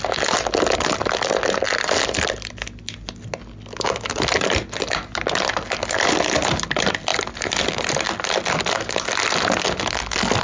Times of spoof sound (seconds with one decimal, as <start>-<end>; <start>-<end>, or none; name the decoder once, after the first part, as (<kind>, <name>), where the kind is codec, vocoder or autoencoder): none